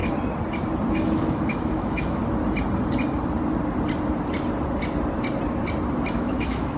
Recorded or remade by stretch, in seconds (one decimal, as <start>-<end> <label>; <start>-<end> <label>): 0.0-0.9 recorded; 0.9-2.2 remade; 2.2-6.1 recorded; 6.1-6.8 remade